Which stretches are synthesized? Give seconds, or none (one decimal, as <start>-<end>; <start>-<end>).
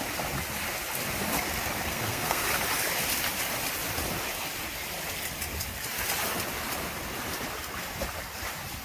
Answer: 1.9-2.4